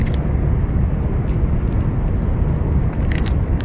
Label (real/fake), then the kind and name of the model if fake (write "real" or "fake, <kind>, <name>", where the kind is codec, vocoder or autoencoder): real